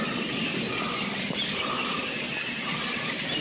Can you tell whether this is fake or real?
real